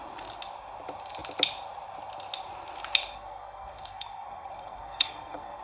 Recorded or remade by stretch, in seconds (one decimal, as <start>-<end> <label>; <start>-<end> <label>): 0.0-3.1 recorded; 3.1-5.6 remade